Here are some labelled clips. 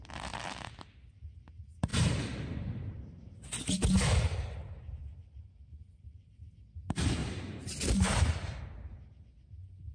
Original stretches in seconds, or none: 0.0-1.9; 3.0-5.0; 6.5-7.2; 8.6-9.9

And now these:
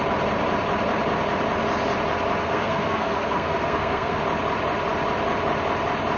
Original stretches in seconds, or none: 0.0-2.4; 4.2-6.2

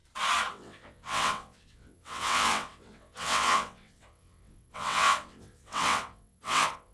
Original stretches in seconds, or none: 0.0-0.5

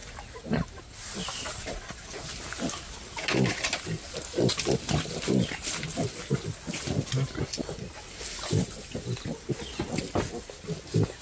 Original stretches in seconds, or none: 0.0-11.2

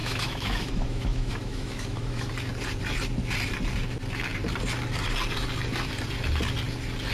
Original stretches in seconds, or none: 2.3-7.1

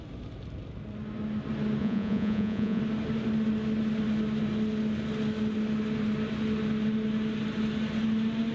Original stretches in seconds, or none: 0.0-1.8; 2.8-8.5